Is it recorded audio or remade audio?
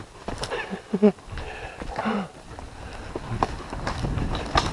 recorded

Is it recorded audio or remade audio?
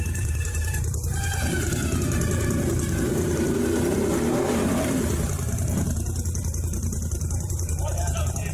remade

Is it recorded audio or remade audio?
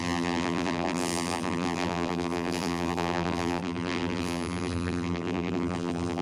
remade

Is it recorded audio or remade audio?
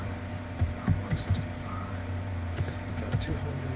remade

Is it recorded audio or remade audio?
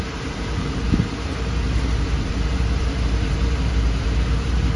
remade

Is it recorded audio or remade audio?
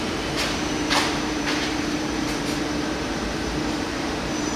remade